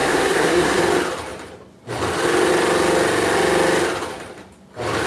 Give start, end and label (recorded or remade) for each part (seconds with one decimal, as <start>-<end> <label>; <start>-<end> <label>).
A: 0.0-0.8 remade; 0.8-5.1 recorded